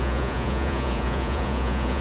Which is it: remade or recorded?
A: remade